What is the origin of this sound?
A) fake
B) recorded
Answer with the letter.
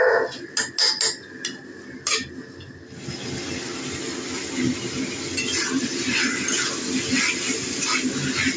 B